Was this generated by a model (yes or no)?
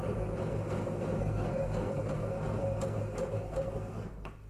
yes